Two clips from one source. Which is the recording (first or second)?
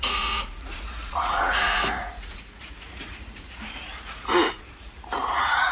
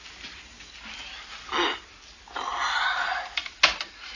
second